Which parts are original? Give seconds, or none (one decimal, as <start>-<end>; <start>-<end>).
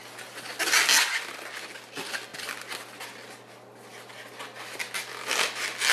0.0-5.9